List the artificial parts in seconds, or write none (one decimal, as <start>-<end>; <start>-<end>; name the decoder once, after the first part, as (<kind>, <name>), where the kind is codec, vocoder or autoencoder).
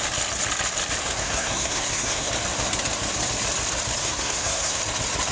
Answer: 1.0-2.3 (codec, SNAC); 4.0-4.8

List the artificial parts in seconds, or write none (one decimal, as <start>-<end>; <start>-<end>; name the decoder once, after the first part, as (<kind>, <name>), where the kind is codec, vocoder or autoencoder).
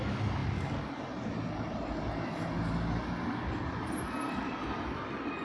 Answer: none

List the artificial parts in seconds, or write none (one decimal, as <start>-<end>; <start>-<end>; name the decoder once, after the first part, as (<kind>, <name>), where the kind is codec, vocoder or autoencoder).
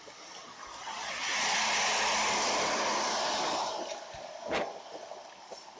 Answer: none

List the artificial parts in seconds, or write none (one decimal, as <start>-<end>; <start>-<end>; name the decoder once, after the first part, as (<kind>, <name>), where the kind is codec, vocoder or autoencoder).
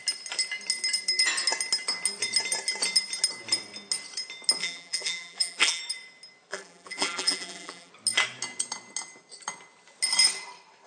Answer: 4.6-5.8 (vocoder, BigVGAN v2); 6.5-7.9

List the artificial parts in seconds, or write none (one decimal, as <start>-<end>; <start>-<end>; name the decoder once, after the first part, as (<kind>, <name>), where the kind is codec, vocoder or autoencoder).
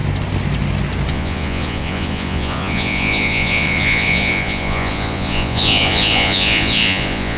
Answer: 1.1-7.4 (vocoder, Vocos)